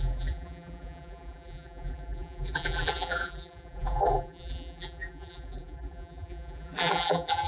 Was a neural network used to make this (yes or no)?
yes